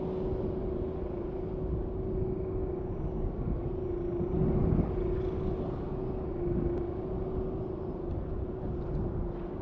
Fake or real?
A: real